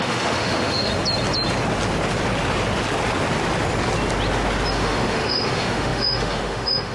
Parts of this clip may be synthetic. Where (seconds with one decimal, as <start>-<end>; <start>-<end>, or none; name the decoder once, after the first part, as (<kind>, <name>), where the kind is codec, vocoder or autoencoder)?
0.0-0.9 (autoencoder, DAC-VAE); 4.7-6.9